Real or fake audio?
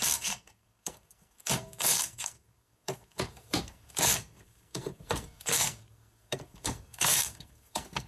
fake